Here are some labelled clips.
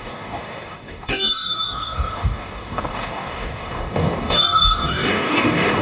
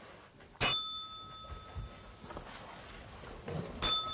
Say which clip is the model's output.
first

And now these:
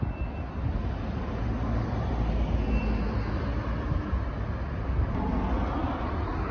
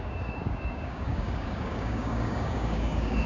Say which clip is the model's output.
second